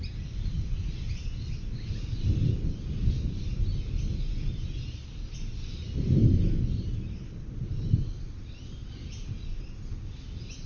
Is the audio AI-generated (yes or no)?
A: no